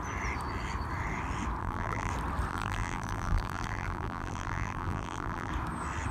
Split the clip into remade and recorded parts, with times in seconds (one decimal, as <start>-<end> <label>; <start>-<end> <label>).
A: 0.0-1.6 recorded; 1.6-2.1 remade; 2.1-2.5 recorded; 2.5-5.5 remade; 5.5-6.1 recorded